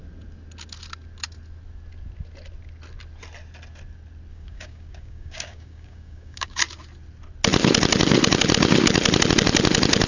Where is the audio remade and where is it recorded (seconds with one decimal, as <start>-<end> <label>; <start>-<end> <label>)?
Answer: 0.0-4.3 recorded; 4.3-6.6 remade; 6.6-10.1 recorded